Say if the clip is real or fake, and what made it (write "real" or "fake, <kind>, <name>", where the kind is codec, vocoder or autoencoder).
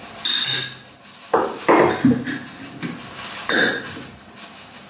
real